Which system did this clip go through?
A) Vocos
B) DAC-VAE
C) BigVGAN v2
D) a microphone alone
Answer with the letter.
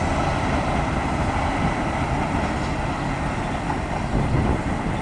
D